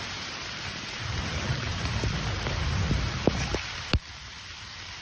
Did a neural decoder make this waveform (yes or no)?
yes